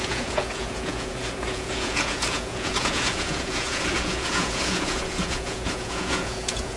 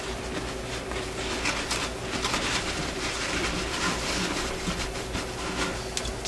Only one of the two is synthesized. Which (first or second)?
first